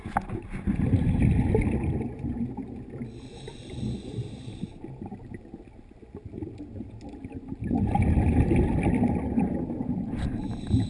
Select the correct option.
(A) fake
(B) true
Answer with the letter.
B